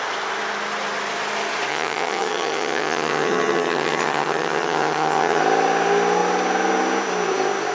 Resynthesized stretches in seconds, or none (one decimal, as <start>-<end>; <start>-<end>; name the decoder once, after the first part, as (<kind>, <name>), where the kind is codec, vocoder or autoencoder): 1.7-5.4 (vocoder, HiFi-GAN)